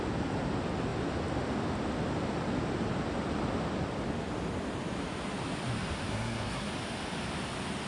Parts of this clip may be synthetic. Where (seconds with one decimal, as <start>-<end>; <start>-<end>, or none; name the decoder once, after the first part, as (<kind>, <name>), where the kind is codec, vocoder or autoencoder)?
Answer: 6.1-6.7 (codec, SNAC)